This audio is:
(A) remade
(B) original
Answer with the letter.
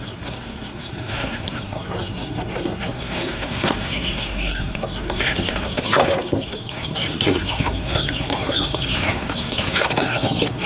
A